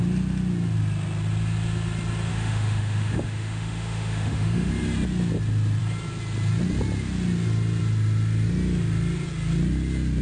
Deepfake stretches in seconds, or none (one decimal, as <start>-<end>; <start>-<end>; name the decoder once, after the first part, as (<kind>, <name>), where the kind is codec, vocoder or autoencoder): 2.3-4.7 (autoencoder, DAC-VAE)

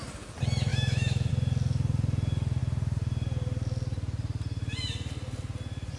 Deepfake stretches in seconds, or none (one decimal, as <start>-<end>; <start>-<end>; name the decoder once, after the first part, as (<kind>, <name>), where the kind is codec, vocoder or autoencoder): 0.7-1.3 (autoencoder, DAC-VAE)